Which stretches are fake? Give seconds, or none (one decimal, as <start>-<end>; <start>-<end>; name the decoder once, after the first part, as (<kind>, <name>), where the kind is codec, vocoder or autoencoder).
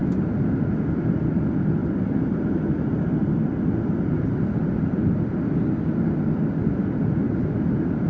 none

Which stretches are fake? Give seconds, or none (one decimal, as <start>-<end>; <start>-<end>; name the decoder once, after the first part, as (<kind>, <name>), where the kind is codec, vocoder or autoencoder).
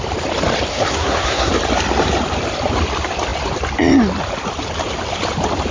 0.7-1.5 (codec, SNAC)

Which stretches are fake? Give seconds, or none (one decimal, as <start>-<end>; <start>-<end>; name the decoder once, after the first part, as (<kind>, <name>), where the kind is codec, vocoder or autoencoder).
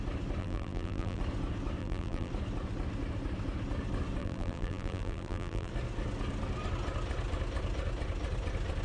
0.4-1.2 (vocoder, BigVGAN v2); 1.8-2.3; 4.2-5.7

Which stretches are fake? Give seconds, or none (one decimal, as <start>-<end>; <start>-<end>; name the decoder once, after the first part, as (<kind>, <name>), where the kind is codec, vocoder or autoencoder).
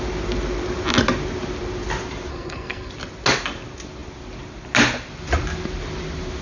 2.3-2.9 (codec, SNAC)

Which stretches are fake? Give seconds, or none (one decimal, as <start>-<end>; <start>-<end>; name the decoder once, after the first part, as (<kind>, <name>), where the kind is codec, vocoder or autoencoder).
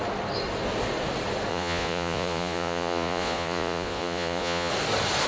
1.5-4.7 (vocoder, Vocos)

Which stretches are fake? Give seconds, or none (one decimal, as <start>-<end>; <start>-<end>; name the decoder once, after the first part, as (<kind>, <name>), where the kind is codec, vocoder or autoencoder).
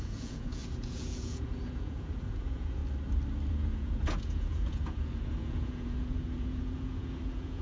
0.0-2.8 (vocoder, Vocos); 3.5-7.6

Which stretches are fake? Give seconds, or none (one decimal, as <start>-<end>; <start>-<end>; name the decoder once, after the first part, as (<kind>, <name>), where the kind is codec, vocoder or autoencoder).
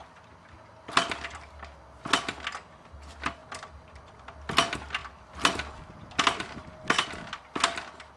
none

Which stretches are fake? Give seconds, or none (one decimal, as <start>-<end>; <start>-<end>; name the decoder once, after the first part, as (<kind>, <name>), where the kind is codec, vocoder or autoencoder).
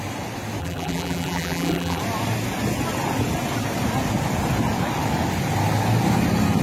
0.6-2.0 (vocoder, BigVGAN v2)